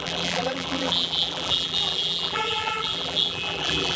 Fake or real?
fake